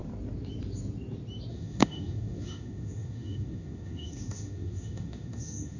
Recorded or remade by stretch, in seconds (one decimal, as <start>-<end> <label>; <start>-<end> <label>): 0.0-1.5 recorded; 1.5-5.8 remade